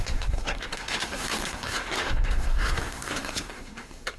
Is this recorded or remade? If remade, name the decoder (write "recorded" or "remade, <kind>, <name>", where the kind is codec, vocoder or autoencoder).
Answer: remade, codec, SNAC